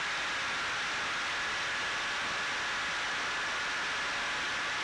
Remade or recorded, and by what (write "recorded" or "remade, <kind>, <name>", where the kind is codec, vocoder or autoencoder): remade, vocoder, BigVGAN v2